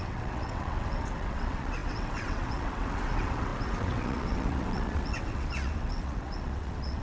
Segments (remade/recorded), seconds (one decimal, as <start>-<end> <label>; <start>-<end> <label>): 0.0-7.0 remade